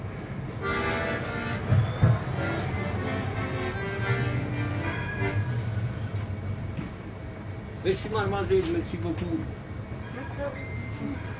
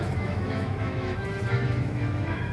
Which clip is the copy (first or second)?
second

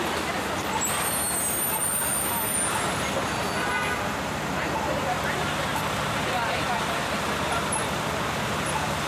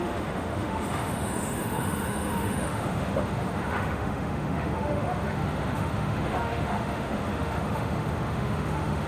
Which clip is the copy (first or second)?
second